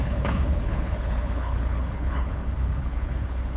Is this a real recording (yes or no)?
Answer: no